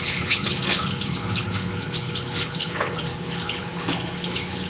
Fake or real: fake